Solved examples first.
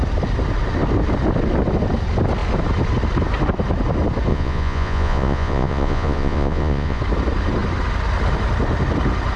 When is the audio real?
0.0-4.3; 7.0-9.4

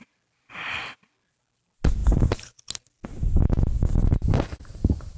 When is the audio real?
0.0-4.0; 4.8-5.2

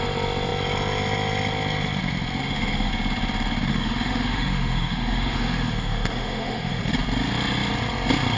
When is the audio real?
0.0-2.4; 2.9-3.7; 6.8-8.4

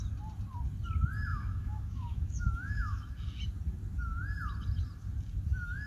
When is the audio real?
0.0-1.3; 3.1-5.9

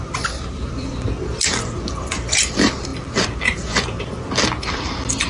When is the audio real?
none

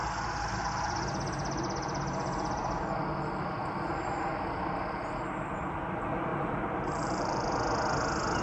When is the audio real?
0.0-3.6; 4.4-6.3; 7.5-8.4